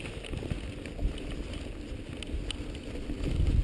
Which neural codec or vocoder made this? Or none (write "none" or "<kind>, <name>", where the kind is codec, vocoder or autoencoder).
none